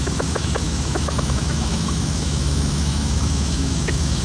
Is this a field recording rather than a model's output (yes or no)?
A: no